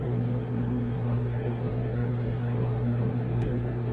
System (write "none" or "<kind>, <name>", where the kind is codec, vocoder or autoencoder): codec, SNAC